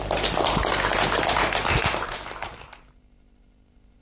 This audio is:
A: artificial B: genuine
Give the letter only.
A